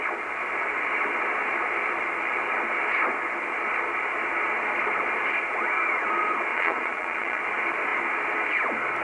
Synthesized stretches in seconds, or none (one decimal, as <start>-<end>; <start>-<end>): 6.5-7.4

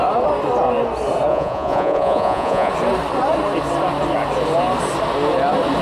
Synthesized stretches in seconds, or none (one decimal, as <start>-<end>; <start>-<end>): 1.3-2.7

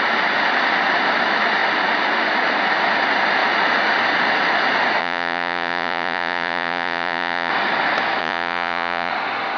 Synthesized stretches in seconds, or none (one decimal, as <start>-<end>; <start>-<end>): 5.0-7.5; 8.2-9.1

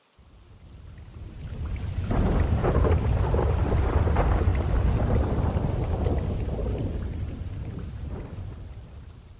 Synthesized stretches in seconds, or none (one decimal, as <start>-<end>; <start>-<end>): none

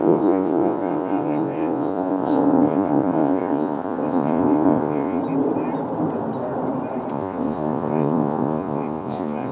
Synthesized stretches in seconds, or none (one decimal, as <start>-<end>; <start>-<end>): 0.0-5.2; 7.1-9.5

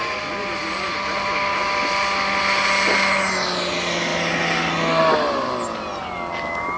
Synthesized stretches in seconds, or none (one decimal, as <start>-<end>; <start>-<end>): none